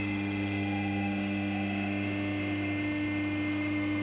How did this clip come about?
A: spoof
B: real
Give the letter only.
A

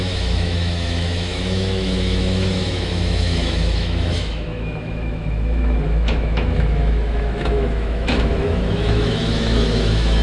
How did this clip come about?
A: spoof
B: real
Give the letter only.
A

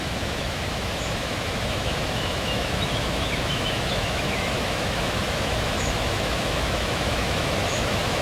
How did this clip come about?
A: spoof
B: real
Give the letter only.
A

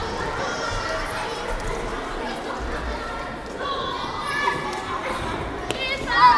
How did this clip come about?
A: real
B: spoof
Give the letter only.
A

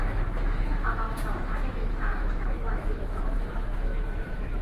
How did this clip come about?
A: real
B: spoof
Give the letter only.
B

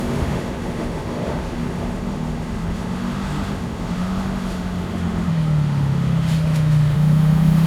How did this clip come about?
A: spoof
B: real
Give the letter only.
A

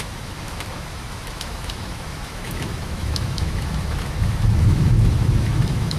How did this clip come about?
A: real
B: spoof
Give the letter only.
B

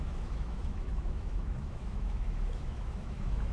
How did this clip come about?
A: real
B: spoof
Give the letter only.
B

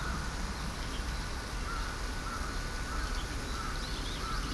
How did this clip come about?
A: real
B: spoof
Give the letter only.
A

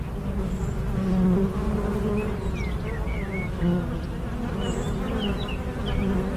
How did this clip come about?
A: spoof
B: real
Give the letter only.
B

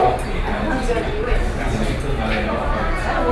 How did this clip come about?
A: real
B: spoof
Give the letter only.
A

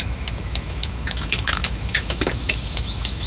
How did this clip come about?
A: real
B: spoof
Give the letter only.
B